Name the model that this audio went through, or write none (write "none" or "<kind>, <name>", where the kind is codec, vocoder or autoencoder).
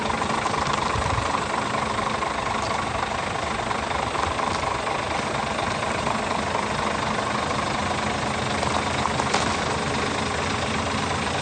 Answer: none